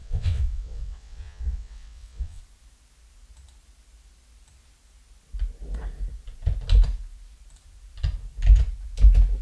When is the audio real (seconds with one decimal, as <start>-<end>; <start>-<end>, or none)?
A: 2.4-9.4